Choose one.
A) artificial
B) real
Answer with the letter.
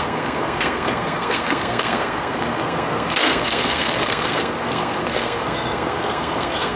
A